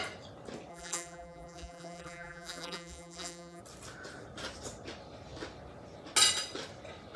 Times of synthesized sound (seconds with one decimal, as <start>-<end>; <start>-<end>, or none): 0.7-3.6